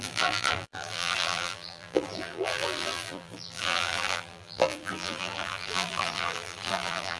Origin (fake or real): fake